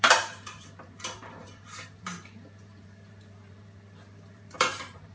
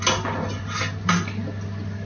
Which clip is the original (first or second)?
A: second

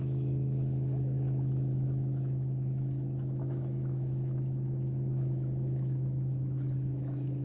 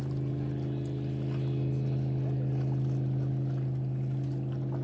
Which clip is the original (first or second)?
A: second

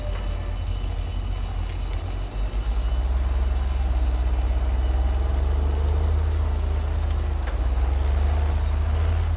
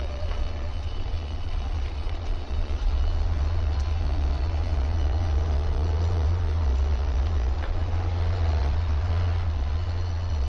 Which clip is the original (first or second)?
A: first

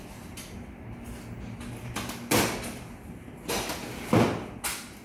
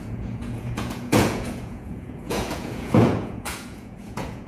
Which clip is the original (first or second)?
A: first